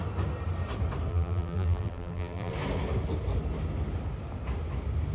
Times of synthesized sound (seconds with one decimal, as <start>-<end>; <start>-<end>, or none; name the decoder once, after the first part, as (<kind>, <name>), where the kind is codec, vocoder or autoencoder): 1.1-2.5 (vocoder, BigVGAN v2)